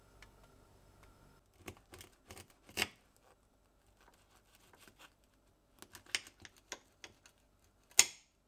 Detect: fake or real real